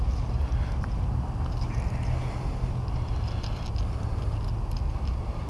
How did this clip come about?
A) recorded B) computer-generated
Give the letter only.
A